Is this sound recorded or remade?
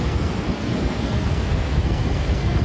remade